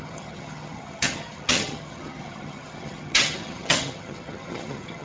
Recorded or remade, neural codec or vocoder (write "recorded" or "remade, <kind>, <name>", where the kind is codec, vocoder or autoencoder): remade, vocoder, HiFi-GAN